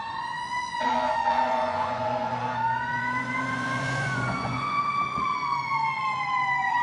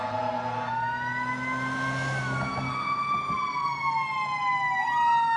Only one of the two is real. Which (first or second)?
second